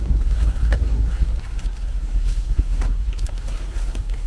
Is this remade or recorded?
remade